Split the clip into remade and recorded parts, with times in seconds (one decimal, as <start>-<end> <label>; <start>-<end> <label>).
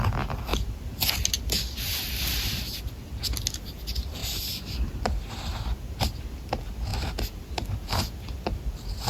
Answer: 0.0-9.1 recorded